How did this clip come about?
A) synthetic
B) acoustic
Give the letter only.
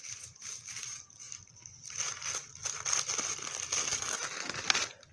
B